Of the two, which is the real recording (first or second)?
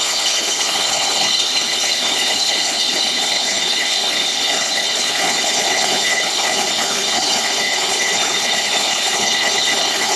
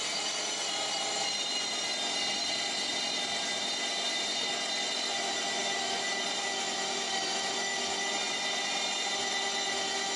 second